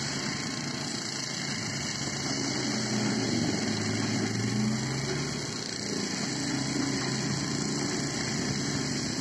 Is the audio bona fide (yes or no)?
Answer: yes